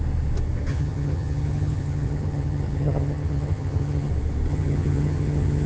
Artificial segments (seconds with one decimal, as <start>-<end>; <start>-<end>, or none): 0.7-4.1; 4.5-5.7